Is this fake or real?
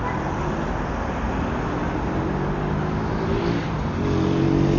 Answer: real